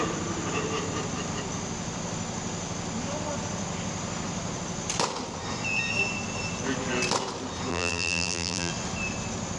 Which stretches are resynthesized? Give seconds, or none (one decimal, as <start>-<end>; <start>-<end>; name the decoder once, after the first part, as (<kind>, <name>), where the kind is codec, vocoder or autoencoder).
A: 7.7-8.7 (vocoder, BigVGAN v2)